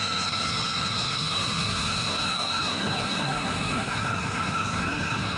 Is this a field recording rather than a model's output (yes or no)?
no